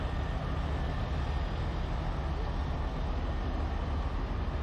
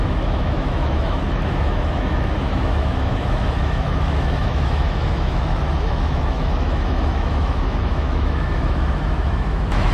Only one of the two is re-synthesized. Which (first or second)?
second